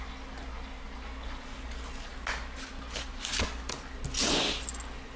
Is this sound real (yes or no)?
yes